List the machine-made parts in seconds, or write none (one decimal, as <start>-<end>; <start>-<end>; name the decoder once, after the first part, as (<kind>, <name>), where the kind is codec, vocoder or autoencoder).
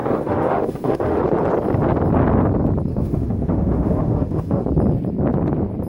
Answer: 0.0-1.2 (autoencoder, DAC-VAE); 2.9-4.6